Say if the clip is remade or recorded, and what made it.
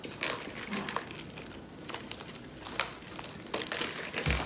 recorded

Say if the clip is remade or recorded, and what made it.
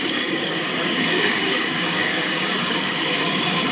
remade, codec, DAC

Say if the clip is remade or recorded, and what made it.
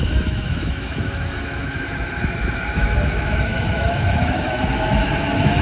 remade, autoencoder, DAC-VAE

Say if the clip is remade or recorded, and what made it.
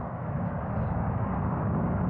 remade, codec, DAC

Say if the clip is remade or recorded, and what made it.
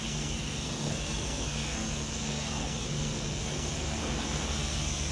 remade, codec, SNAC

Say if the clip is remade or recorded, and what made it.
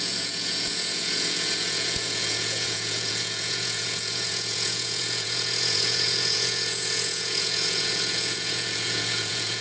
remade, vocoder, Vocos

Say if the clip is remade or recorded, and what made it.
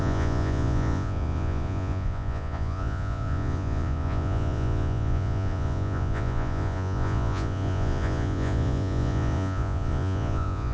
remade, vocoder, Vocos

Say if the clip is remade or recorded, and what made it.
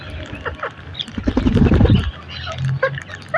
recorded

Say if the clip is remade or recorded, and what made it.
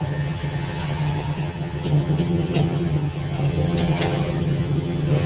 remade, vocoder, HiFi-GAN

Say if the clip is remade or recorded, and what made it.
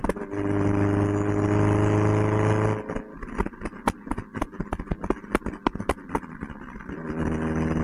recorded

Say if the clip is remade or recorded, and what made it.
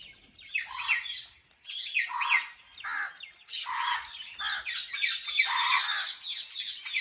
recorded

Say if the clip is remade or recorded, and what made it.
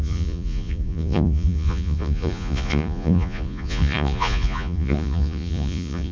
remade, vocoder, Vocos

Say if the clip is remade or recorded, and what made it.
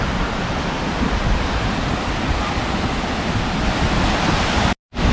recorded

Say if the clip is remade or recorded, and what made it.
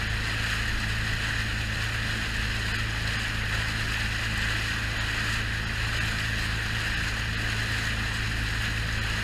recorded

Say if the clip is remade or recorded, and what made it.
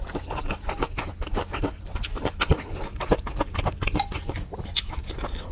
recorded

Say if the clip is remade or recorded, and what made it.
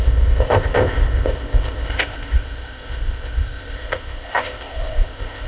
remade, codec, ZipCodec